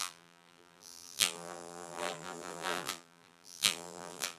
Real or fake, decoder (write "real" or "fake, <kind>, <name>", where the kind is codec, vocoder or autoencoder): fake, vocoder, BigVGAN v2